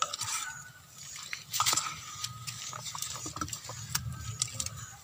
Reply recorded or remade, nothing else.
recorded